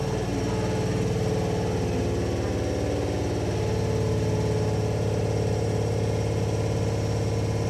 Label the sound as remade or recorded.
recorded